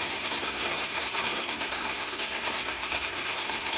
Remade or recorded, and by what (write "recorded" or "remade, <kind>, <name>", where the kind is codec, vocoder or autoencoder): remade, codec, SNAC